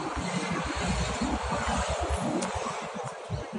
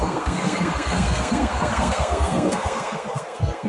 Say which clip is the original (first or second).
first